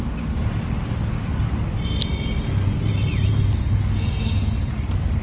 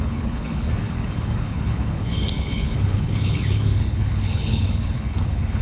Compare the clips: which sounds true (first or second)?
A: first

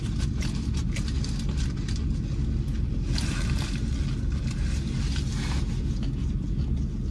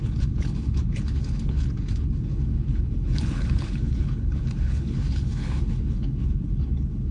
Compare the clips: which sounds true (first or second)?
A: first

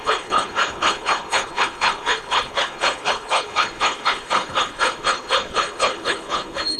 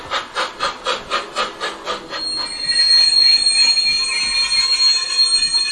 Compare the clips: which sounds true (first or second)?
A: second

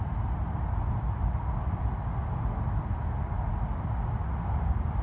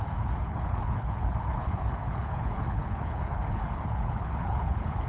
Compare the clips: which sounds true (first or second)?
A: first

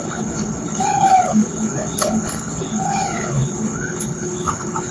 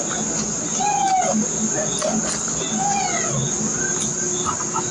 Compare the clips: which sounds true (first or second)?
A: second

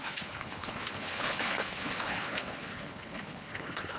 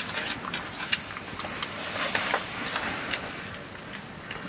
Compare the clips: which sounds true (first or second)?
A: second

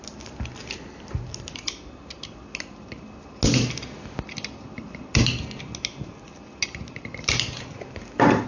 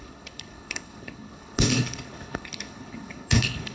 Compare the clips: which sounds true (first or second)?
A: first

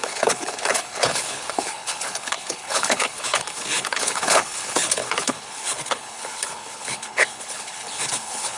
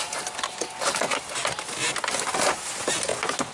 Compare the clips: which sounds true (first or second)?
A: second